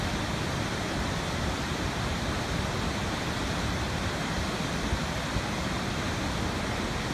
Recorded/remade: recorded